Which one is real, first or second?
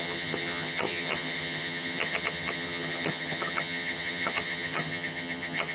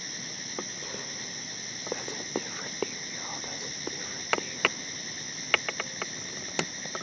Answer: second